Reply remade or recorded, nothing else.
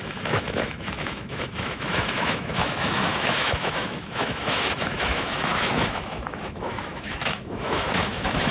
remade